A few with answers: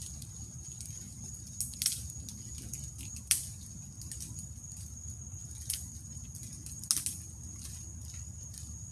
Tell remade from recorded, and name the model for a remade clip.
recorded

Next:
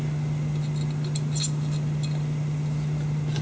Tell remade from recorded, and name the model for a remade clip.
recorded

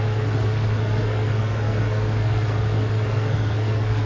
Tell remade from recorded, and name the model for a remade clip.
remade, codec, SNAC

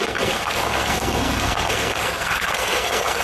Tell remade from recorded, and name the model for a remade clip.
remade, codec, SNAC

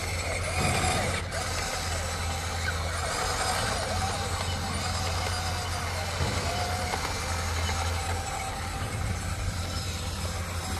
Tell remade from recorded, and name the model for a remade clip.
recorded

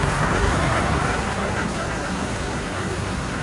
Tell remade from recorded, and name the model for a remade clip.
remade, codec, SNAC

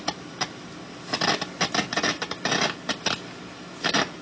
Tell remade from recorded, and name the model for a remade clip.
recorded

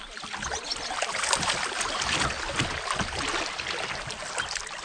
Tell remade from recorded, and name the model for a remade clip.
recorded